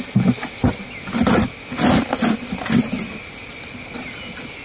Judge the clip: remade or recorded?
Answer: recorded